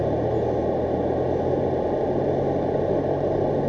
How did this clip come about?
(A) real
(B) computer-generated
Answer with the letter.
A